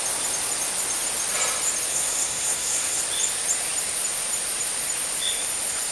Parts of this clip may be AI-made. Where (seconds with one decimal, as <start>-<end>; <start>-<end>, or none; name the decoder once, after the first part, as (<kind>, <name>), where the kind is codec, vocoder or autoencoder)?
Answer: 1.9-3.0 (codec, SNAC)